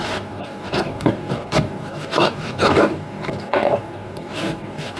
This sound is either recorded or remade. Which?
remade